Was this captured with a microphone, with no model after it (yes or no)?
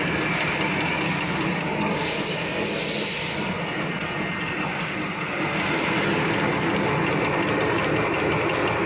yes